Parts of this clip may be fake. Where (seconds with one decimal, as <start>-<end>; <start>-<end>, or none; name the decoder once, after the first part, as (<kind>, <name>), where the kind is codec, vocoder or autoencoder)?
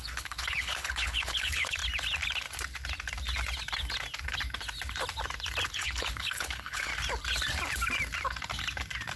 0.0-1.8 (codec, HILCodec); 5.7-6.9